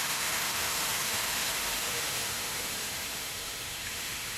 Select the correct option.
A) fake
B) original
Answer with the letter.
A